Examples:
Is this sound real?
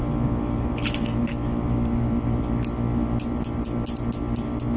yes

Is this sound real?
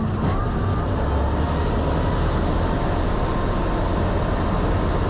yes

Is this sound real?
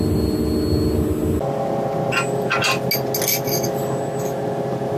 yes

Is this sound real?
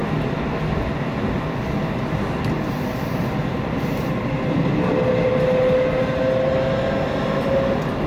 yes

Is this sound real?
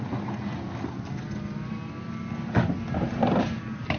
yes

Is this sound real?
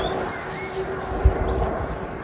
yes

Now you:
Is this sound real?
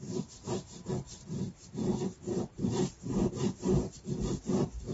no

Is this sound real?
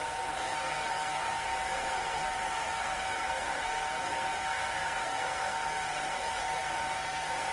no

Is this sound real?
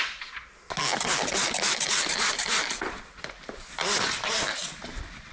yes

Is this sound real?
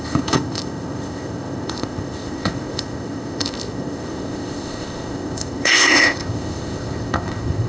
no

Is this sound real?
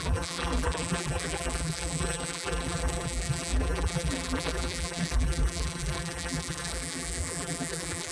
no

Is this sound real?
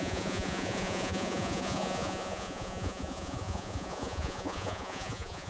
no